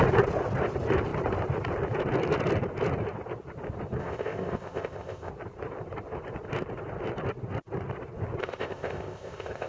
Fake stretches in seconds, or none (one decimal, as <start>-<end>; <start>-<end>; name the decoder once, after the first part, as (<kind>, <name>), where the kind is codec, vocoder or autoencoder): 4.0-5.3 (codec, ZipCodec); 8.4-9.7